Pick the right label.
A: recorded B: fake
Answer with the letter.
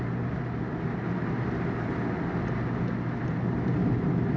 A